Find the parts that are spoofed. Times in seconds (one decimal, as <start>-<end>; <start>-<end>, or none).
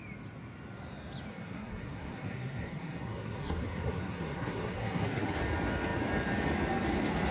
1.3-5.4